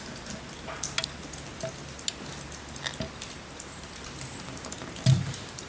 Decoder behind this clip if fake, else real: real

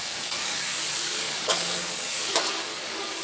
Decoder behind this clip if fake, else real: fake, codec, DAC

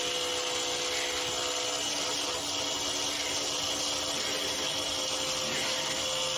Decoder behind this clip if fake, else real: real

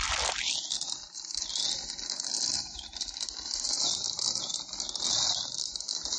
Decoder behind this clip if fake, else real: real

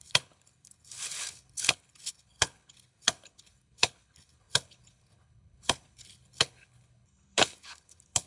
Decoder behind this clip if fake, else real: fake, codec, HILCodec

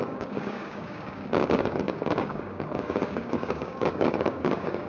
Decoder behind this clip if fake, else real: fake, codec, DAC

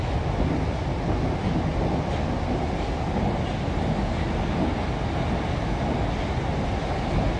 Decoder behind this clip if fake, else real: real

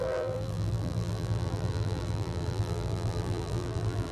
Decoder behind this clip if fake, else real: fake, vocoder, BigVGAN v2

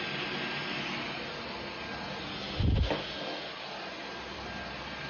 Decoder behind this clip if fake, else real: real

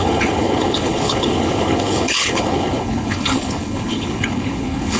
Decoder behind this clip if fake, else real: fake, codec, HILCodec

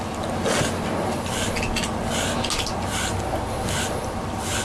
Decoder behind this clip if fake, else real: real